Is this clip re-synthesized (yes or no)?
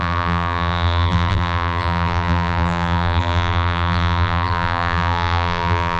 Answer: yes